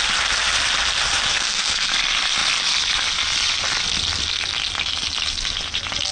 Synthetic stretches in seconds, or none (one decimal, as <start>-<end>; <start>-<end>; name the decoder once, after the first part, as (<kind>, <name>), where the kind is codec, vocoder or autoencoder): 1.3-1.9 (codec, SNAC)